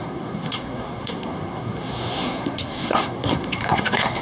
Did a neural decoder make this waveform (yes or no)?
yes